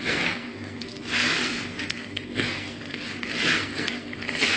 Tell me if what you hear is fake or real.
fake